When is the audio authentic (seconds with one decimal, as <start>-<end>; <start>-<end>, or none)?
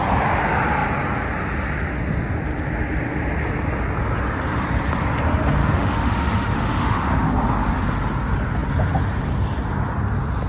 0.0-5.6; 7.3-10.5